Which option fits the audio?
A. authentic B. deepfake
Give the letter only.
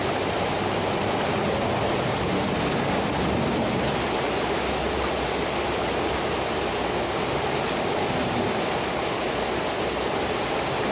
A